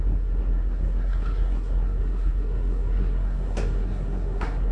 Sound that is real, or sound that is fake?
fake